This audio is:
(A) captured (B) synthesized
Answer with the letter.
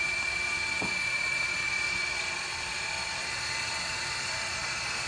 B